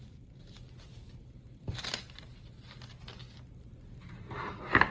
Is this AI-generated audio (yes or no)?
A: no